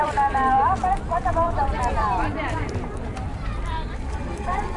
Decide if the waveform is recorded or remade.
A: remade